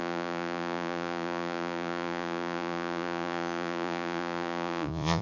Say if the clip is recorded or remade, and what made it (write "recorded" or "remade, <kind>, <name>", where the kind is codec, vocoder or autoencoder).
remade, vocoder, Vocos